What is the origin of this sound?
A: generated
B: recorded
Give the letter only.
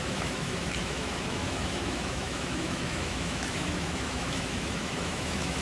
A